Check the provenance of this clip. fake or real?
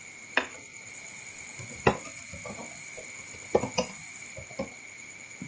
real